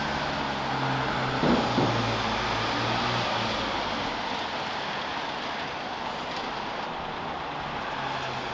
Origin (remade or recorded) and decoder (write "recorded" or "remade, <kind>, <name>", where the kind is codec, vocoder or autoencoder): recorded